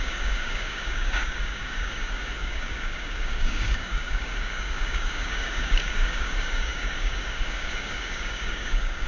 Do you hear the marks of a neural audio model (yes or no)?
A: yes